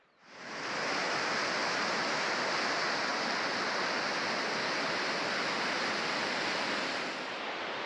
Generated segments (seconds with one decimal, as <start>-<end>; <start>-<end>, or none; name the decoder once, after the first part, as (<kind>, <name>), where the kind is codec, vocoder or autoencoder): none